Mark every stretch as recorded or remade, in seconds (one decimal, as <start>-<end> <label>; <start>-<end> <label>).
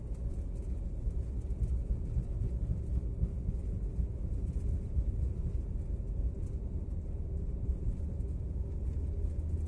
0.0-9.7 recorded